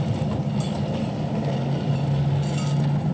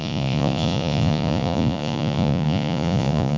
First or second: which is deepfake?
second